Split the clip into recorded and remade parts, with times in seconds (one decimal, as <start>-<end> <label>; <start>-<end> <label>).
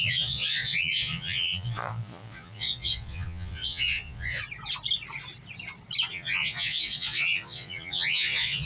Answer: 0.0-4.4 remade; 4.4-6.1 recorded; 6.1-8.7 remade